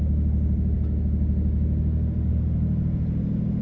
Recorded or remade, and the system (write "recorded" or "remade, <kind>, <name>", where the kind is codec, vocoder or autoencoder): recorded